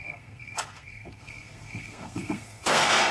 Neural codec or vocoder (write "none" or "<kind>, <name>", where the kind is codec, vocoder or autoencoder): codec, SNAC